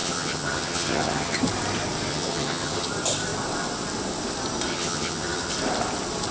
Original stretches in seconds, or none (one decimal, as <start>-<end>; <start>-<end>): 1.4-2.1; 2.9-4.7; 5.5-6.3